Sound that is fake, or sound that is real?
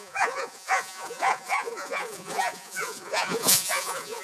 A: fake